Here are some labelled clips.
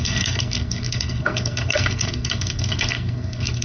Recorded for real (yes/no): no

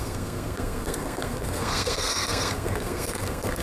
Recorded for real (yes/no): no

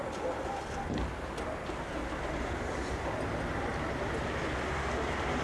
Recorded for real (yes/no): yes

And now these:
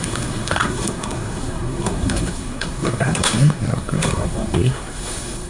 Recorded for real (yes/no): no